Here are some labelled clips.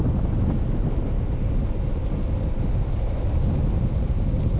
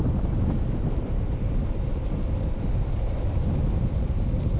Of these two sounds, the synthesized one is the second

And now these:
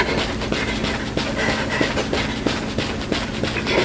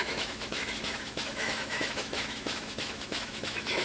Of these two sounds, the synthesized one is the second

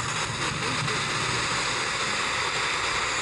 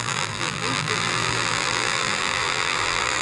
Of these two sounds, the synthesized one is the second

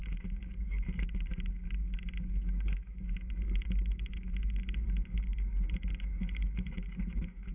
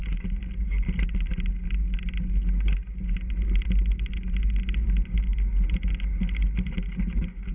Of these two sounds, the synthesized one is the first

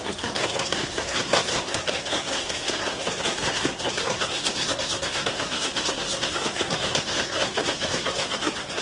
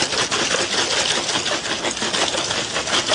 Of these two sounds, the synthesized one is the first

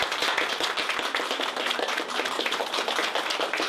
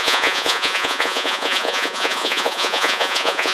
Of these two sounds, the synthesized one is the second